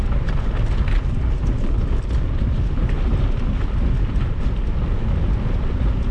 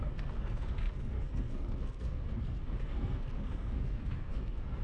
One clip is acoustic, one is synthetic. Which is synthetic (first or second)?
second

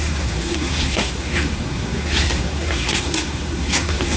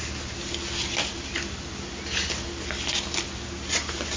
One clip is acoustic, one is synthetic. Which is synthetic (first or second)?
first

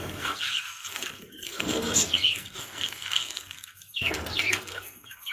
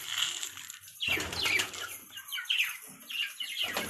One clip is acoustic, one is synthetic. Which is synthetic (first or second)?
first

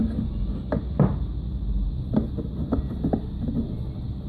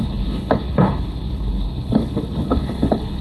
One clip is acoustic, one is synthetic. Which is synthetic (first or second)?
second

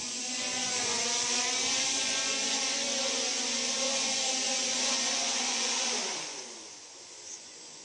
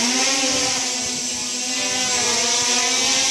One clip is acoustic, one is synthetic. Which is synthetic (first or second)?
first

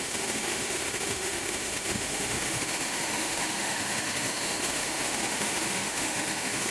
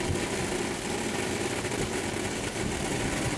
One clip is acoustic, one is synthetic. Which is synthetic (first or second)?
first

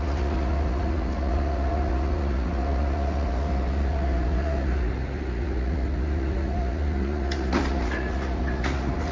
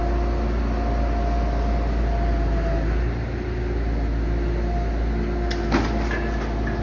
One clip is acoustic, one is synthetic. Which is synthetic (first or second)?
first